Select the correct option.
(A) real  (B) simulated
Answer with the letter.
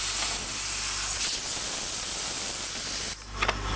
A